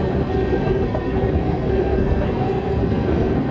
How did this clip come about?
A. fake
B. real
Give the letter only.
A